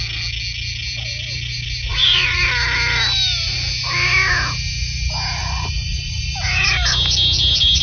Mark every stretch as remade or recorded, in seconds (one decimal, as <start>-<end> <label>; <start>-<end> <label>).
0.0-1.9 recorded; 1.9-2.4 remade; 2.4-5.4 recorded; 5.4-6.2 remade; 6.2-7.8 recorded